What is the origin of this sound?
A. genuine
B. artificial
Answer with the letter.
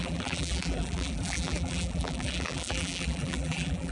B